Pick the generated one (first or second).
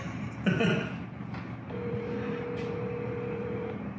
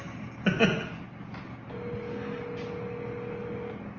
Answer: first